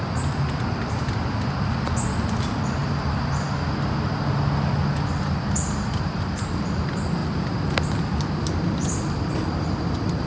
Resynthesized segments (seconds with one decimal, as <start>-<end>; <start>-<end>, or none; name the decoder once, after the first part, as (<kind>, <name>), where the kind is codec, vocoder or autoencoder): none